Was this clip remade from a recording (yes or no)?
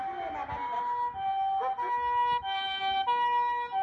no